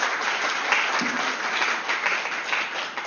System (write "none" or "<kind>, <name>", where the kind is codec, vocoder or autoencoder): none